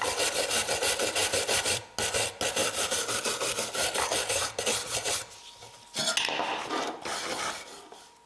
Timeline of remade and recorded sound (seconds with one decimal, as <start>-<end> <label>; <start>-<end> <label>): 0.0-1.2 recorded; 1.2-1.8 remade; 1.8-2.6 recorded; 2.6-6.1 remade; 6.1-8.3 recorded